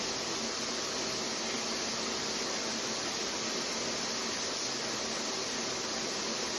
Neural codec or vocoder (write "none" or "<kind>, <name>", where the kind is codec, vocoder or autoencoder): none